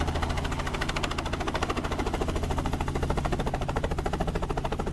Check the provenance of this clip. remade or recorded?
recorded